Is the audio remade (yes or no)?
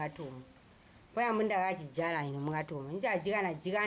no